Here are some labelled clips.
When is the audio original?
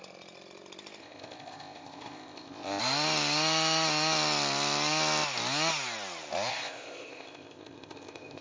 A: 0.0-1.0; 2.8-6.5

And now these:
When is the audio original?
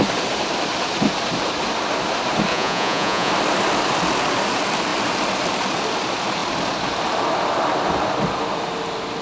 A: 0.0-2.5; 3.3-9.2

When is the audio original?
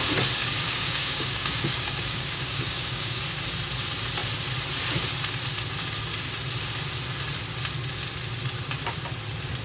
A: 0.0-0.4; 3.2-9.6